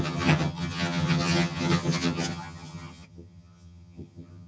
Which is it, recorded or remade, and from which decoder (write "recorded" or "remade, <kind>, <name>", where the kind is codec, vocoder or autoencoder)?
remade, vocoder, HiFi-GAN